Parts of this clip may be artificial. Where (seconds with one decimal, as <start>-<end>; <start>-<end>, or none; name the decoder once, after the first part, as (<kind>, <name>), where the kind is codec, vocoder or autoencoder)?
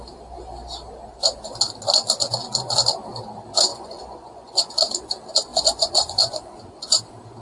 3.7-4.7 (vocoder, Vocos); 5.5-7.0